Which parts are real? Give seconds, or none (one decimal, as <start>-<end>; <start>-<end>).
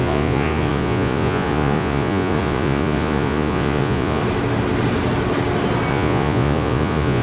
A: 4.2-5.9